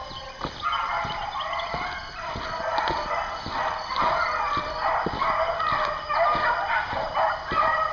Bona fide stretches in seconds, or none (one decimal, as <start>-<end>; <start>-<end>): 0.0-7.9